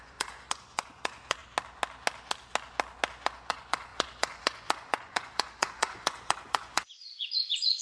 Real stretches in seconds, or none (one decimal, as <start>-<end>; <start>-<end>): 1.4-3.1